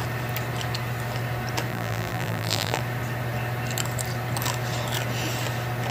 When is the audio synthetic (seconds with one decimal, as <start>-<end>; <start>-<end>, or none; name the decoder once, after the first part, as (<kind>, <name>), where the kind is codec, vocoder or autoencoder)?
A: 1.7-2.8 (vocoder, BigVGAN v2)